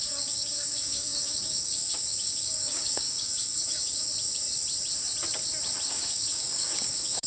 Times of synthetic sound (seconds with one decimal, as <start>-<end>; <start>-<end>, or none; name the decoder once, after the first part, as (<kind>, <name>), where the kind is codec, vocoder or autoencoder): 0.0-4.1 (codec, DAC); 5.9-7.3